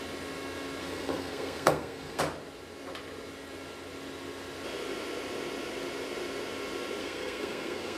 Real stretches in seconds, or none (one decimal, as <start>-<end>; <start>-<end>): 0.0-0.8; 2.2-7.0

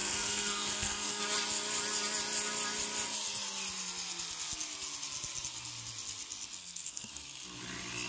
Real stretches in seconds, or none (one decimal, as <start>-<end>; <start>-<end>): 1.2-6.6; 7.1-8.1

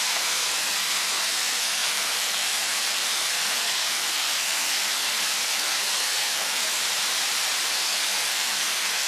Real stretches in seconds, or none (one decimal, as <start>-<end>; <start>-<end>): 6.8-7.7

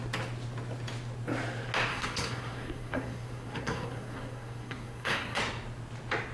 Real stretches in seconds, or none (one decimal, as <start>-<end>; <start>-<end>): 0.0-1.9; 5.4-6.3

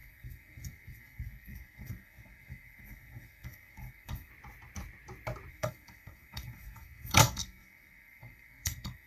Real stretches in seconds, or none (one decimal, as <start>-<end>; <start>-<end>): 4.3-5.5